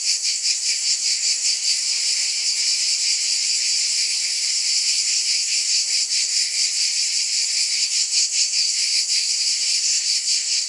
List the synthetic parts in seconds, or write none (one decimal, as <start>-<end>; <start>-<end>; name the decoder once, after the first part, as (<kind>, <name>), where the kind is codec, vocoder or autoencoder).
0.0-2.5 (codec, SNAC); 3.9-6.6; 7.5-10.7